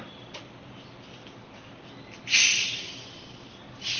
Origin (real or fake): fake